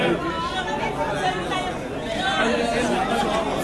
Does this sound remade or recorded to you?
recorded